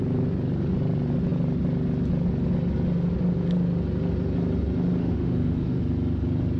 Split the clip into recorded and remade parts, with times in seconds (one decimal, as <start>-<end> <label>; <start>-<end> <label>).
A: 0.0-5.0 recorded; 5.0-5.8 remade; 5.8-6.6 recorded